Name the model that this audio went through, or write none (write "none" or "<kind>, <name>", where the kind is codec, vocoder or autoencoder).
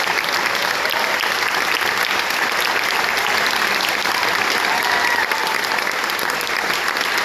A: none